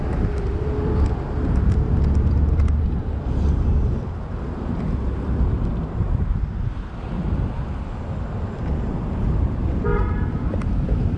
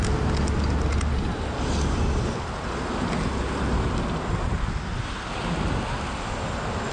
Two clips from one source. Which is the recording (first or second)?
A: second